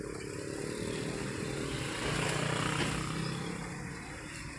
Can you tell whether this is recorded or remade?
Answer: recorded